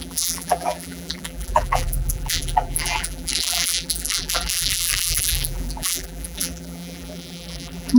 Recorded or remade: remade